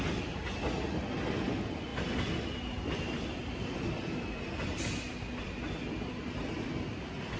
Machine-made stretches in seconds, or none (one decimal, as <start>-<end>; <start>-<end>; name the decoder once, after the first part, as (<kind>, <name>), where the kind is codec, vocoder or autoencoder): none